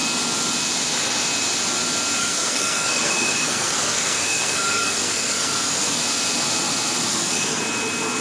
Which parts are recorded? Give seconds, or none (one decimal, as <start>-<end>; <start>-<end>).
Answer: 0.0-2.2; 6.0-7.1; 7.6-8.2